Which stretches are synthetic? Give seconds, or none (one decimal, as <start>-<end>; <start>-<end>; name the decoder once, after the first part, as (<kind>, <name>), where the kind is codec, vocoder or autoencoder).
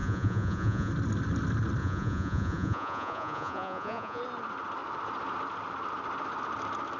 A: 0.0-0.9 (vocoder, Vocos); 1.8-4.2